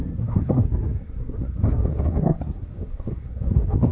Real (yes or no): no